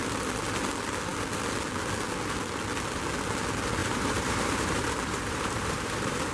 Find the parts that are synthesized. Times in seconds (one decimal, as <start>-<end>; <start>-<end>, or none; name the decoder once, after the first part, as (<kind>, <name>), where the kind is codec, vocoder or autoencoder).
3.8-6.3 (vocoder, BigVGAN v2)